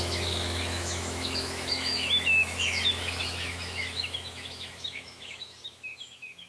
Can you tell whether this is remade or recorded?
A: remade